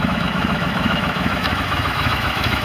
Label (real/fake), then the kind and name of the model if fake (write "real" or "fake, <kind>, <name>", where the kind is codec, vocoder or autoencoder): fake, autoencoder, DAC-VAE